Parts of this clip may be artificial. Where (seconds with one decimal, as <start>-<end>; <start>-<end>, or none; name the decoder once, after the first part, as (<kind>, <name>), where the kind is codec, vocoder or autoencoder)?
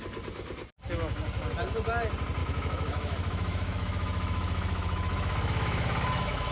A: 2.4-6.5 (autoencoder, DAC-VAE)